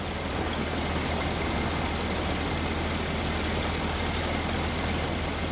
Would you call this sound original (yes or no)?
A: yes